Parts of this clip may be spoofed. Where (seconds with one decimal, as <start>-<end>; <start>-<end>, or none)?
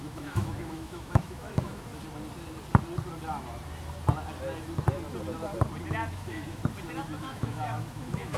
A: 0.0-1.9; 6.1-6.6; 7.2-8.4